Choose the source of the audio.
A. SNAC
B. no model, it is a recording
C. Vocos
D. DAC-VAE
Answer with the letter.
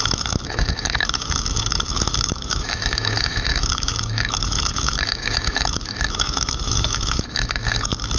D